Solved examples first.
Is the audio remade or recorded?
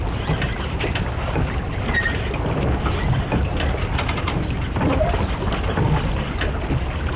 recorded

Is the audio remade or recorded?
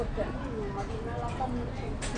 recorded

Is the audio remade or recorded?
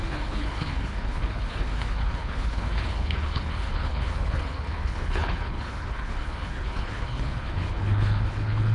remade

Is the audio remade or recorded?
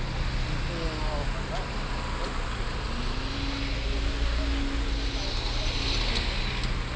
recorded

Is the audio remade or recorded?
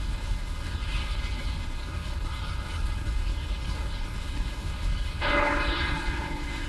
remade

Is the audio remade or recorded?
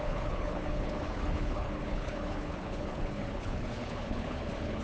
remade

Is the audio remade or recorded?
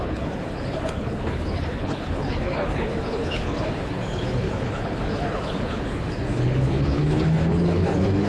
remade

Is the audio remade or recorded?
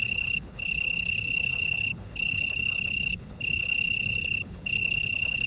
remade